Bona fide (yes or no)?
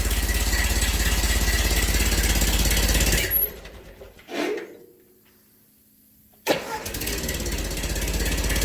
yes